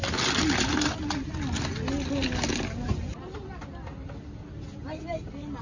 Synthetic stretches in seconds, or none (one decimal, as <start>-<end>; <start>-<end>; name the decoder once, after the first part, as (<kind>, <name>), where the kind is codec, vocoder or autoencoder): none